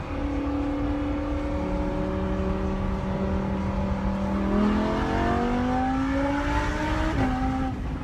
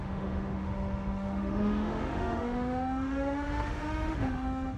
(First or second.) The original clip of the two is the first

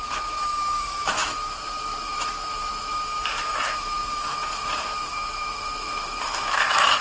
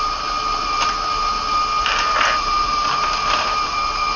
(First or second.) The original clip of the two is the second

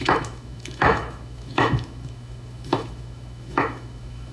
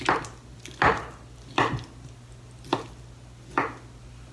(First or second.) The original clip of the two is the second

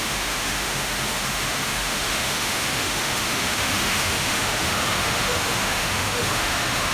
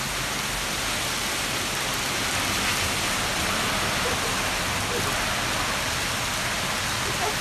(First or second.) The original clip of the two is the second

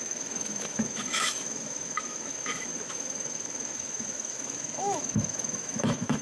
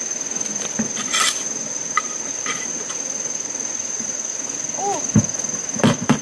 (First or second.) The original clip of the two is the second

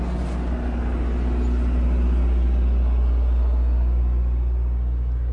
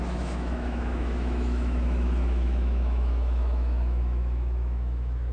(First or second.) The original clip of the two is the first